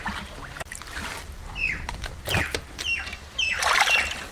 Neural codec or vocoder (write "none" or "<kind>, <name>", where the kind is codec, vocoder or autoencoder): vocoder, BigVGAN v2